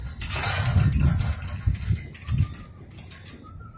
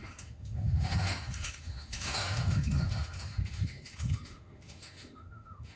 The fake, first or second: second